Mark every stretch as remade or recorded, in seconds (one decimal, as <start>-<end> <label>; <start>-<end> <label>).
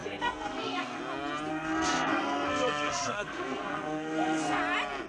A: 0.0-1.0 remade; 1.0-1.5 recorded; 1.5-4.6 remade; 4.6-5.1 recorded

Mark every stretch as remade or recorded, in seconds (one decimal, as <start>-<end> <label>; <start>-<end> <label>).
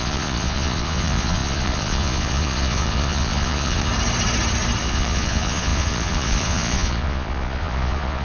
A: 0.0-3.9 remade; 3.9-4.8 recorded; 4.8-8.2 remade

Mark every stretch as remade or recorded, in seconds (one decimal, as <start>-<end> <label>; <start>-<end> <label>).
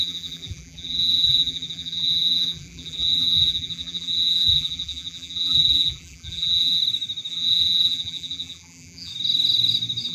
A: 0.0-6.8 remade; 6.8-7.3 recorded; 7.3-9.1 remade; 9.1-10.1 recorded